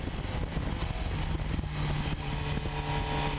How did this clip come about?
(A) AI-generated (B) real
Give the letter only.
B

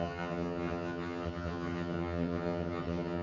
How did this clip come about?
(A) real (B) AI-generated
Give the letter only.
B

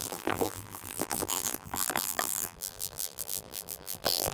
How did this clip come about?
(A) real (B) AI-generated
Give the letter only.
B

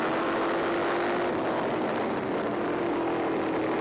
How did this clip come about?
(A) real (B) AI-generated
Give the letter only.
A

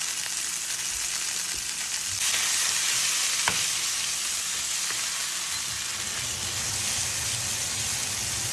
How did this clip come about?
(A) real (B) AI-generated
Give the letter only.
A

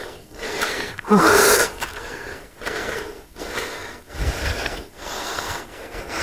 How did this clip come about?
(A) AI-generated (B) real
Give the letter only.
A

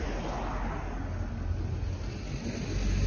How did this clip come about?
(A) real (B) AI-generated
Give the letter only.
A